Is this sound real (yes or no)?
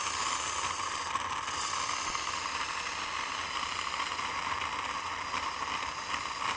yes